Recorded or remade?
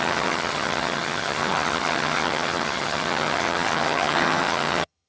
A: remade